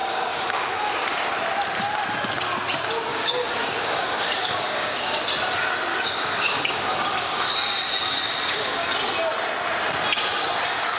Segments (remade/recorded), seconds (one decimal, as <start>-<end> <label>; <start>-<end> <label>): 0.0-0.9 remade; 0.9-3.1 recorded; 3.1-5.2 remade; 5.2-5.9 recorded; 5.9-7.5 remade; 7.5-11.0 recorded